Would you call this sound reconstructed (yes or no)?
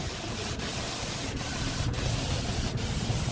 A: no